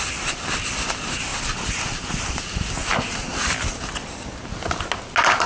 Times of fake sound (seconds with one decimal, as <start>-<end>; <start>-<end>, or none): none